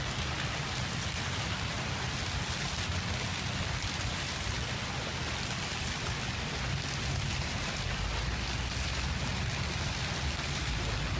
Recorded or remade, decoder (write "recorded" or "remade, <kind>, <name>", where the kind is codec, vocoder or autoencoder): recorded